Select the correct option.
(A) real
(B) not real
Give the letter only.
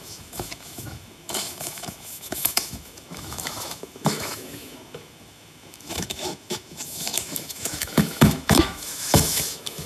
B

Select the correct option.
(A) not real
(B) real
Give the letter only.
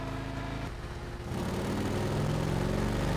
B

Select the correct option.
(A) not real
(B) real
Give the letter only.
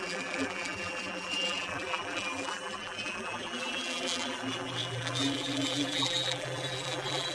A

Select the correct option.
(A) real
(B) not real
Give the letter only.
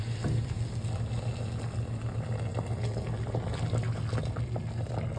A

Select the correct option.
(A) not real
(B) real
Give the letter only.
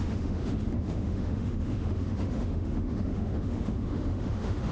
A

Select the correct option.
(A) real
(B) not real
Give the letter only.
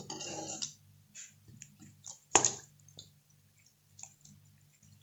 A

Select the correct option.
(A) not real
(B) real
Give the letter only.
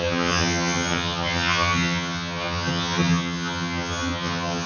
A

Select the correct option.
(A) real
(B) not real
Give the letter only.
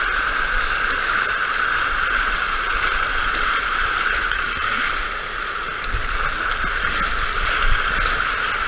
A